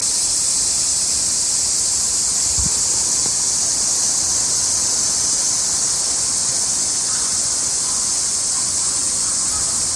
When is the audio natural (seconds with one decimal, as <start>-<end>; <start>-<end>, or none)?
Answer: 0.0-6.4; 9.5-10.0